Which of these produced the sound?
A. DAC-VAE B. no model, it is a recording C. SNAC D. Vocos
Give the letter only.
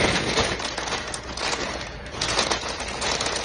D